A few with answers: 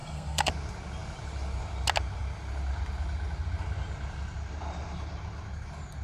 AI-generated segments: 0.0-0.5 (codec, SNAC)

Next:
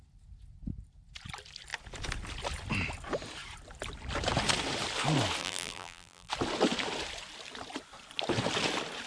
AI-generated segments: 5.4-6.3 (vocoder, BigVGAN v2)

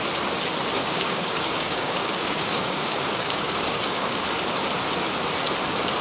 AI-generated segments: 0.8-4.2 (codec, DAC)

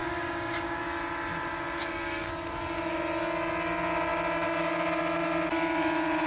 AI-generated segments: 0.0-0.8 (codec, DAC)

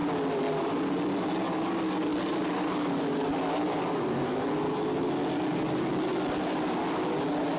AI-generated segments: none

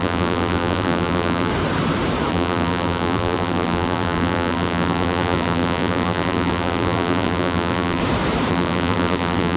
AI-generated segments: 0.0-1.5 (vocoder, BigVGAN v2); 2.3-8.0; 8.5-9.6

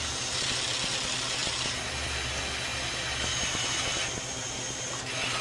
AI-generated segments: 1.4-1.9 (vocoder, BigVGAN v2)

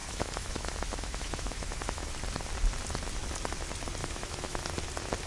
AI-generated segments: 0.0-2.1 (autoencoder, DAC-VAE); 4.0-4.6